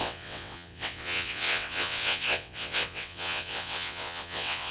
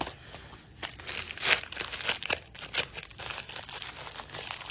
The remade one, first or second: first